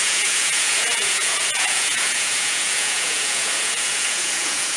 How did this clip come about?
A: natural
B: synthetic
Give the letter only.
B